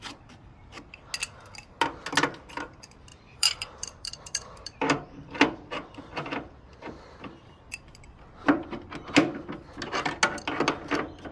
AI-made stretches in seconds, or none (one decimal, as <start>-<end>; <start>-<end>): 3.1-7.6